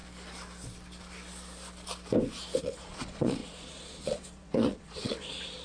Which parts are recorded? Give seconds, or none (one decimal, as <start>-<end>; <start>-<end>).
0.0-2.6